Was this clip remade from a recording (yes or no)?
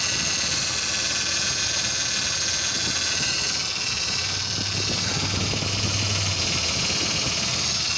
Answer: no